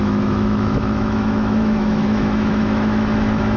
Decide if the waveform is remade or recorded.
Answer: remade